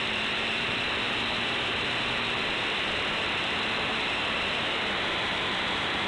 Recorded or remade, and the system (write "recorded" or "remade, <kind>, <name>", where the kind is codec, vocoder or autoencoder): remade, vocoder, BigVGAN v2